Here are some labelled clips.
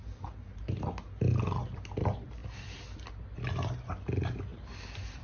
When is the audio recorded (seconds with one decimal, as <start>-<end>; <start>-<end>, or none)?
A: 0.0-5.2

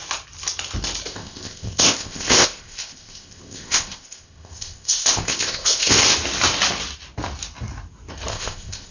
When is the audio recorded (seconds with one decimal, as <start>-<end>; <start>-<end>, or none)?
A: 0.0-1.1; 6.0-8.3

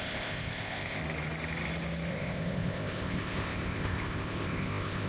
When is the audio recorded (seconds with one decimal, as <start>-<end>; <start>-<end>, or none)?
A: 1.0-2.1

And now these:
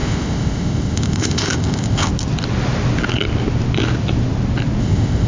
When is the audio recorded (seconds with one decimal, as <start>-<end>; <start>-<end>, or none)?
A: 2.1-4.8

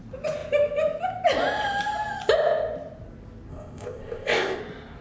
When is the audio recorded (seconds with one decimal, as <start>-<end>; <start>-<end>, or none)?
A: 0.0-3.5; 4.6-5.0

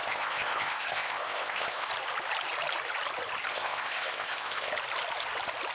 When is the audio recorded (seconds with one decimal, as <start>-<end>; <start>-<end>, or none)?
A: 1.9-3.5; 4.7-5.7